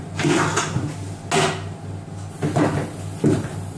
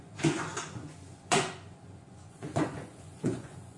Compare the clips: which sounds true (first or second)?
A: first